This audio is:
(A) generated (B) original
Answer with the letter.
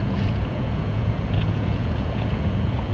A